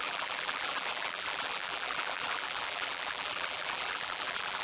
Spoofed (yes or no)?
yes